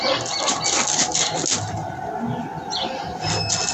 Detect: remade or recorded recorded